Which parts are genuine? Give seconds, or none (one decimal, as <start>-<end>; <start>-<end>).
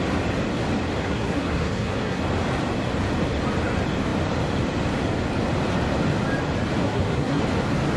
0.0-1.0; 2.2-6.8; 7.4-8.0